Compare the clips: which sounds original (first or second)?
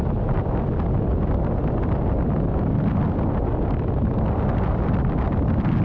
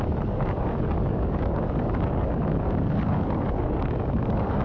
first